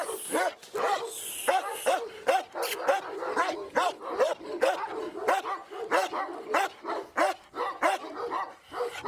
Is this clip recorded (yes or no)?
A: yes